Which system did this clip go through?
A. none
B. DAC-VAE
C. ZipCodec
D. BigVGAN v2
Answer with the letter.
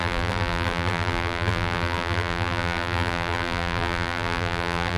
D